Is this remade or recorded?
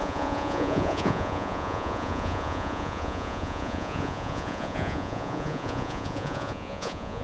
remade